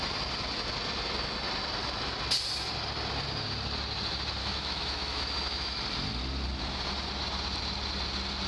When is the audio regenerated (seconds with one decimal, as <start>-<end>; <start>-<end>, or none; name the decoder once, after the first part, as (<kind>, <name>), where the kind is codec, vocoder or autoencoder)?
4.4-5.8 (autoencoder, DAC-VAE)